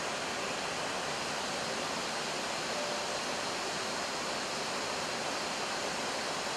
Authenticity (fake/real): real